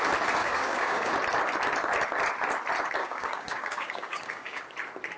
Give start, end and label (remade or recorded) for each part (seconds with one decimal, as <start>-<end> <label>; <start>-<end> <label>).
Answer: 0.0-0.4 recorded; 0.4-1.1 remade; 1.1-3.0 recorded; 3.0-4.6 remade; 4.6-5.2 recorded